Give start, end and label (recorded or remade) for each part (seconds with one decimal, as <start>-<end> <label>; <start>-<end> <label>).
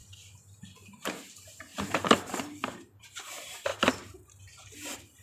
0.0-0.8 recorded; 0.8-5.2 remade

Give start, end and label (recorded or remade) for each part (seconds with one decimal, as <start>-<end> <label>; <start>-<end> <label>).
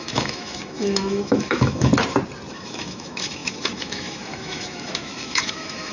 0.0-1.9 remade; 1.9-2.5 recorded; 2.5-5.9 remade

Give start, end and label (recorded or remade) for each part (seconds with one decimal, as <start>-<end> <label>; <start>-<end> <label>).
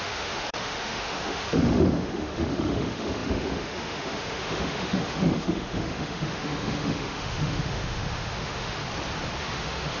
0.0-8.8 remade; 8.8-9.4 recorded; 9.4-10.0 remade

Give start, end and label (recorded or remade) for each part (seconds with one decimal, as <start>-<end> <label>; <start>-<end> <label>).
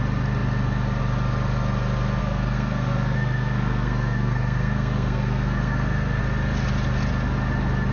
0.0-2.2 recorded; 2.2-6.2 remade; 6.2-7.9 recorded